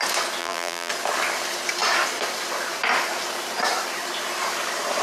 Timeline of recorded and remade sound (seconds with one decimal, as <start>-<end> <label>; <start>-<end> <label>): 0.0-0.4 recorded; 0.4-0.9 remade; 0.9-5.0 recorded